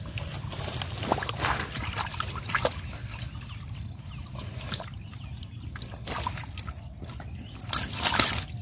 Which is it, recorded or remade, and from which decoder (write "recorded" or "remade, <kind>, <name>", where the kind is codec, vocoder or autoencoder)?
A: recorded